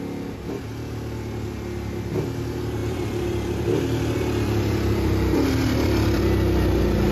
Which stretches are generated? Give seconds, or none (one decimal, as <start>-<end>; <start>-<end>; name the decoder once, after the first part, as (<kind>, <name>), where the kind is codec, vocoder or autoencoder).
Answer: 2.8-6.2 (vocoder, BigVGAN v2)

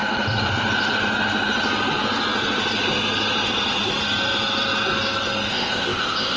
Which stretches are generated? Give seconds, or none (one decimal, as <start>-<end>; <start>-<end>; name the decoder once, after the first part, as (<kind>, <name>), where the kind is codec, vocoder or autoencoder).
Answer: 5.5-6.4 (codec, ZipCodec)

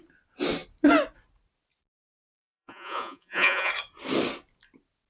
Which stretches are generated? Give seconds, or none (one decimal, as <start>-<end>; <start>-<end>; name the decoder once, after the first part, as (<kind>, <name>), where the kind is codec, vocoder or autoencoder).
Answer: 2.2-3.7 (vocoder, Vocos)

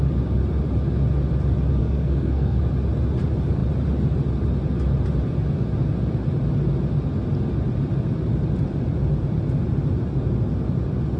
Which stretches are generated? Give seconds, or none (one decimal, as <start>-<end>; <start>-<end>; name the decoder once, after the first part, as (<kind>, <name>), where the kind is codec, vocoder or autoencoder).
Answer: 1.8-2.6 (codec, SNAC)

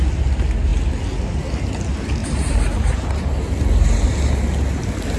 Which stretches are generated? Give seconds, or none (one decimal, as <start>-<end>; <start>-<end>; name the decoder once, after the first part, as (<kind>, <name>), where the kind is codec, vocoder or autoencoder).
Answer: 2.2-3.3 (vocoder, BigVGAN v2)

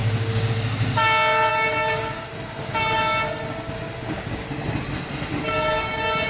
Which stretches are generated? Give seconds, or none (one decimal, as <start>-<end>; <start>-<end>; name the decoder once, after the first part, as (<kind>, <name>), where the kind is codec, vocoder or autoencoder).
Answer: 0.0-0.5 (codec, DAC); 1.5-4.5; 5.3-6.3